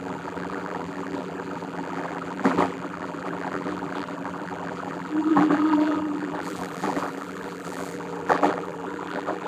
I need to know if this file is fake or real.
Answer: fake